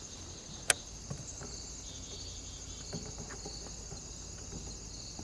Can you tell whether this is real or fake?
real